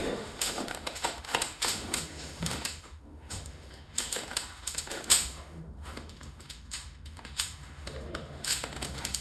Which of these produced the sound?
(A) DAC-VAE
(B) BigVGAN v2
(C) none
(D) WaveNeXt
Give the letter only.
A